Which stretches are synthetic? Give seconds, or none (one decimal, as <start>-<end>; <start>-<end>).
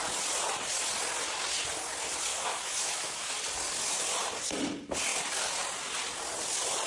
2.3-3.3